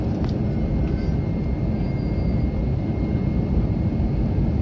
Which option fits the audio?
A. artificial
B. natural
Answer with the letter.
B